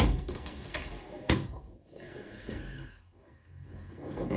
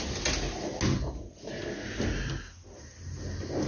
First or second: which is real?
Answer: second